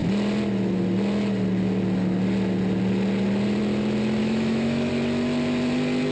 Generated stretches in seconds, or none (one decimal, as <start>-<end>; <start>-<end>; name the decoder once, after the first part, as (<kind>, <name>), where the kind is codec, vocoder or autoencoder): 4.2-4.9 (autoencoder, DAC-VAE)